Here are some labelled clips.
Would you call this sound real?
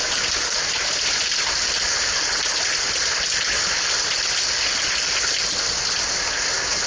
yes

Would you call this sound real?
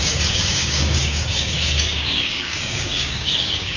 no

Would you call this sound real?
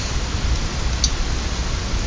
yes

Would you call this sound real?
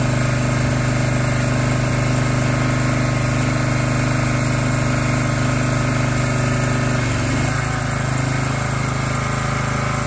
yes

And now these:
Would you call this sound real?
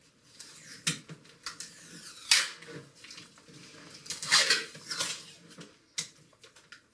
yes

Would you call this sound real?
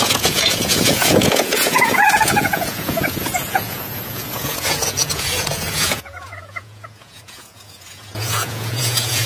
no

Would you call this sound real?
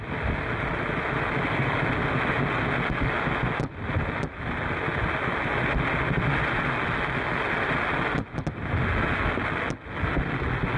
yes